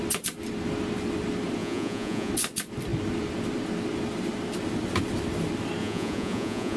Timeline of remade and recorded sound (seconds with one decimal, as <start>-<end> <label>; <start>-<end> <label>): 0.0-1.6 recorded; 1.6-2.3 remade; 2.3-5.8 recorded; 5.8-6.8 remade